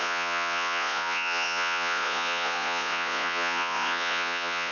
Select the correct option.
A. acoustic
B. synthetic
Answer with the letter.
B